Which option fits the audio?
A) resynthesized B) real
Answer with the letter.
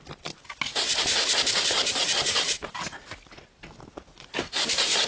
B